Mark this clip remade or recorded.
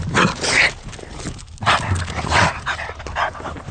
recorded